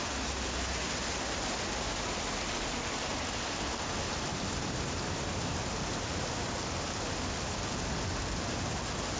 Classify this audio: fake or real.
real